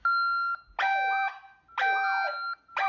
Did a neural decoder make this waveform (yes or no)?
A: no